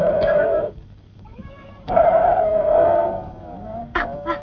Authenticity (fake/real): fake